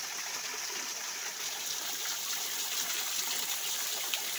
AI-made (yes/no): no